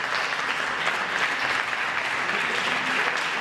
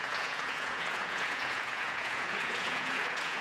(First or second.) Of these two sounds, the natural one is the first